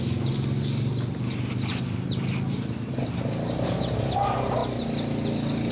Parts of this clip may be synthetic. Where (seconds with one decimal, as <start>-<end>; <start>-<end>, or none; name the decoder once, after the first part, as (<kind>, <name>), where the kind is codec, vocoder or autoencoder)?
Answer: none